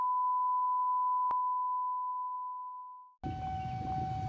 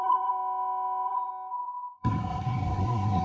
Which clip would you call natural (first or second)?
first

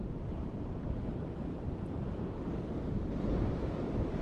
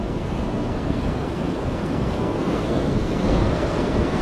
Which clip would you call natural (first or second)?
first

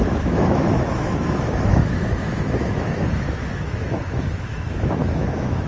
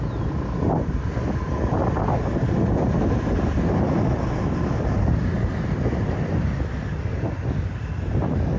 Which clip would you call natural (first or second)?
second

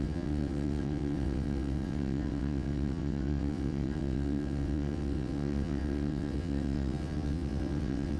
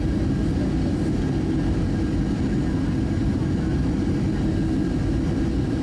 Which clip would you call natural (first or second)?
second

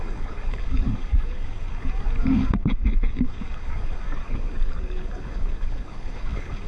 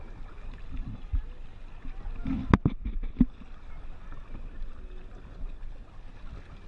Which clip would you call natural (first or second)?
second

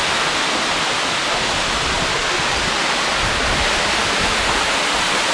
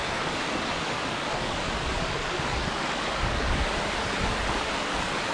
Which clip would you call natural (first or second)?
first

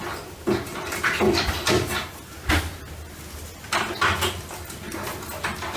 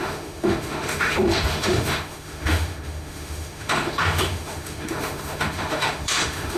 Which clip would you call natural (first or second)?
first